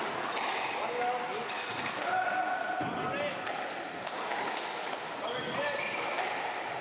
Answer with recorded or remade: recorded